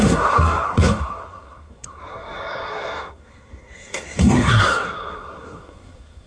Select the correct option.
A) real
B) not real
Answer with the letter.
B